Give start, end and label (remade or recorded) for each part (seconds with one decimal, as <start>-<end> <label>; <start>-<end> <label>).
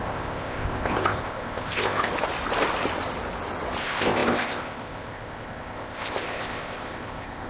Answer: 0.0-2.1 remade; 2.1-3.8 recorded; 3.8-7.5 remade